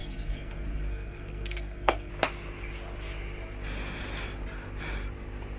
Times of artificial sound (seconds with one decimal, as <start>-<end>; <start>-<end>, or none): 0.0-2.1